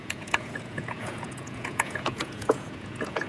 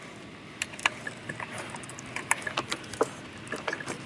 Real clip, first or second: second